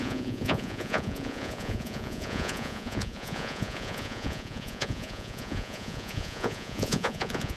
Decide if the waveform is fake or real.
fake